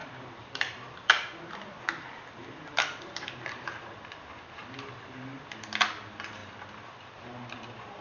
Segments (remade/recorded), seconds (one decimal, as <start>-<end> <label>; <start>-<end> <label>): 0.0-4.0 remade; 4.0-4.6 recorded; 4.6-5.9 remade; 5.9-6.4 recorded; 6.4-7.2 remade; 7.2-8.0 recorded